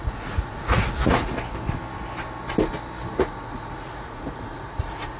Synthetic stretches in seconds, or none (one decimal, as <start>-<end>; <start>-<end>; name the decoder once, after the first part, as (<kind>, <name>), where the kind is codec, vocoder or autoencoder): 0.0-1.3 (vocoder, Vocos); 3.1-5.2